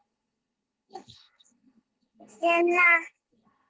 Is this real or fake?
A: fake